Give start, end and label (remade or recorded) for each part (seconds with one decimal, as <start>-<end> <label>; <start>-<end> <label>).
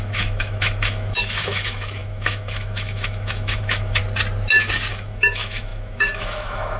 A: 0.0-4.0 remade; 4.0-4.9 recorded; 4.9-6.8 remade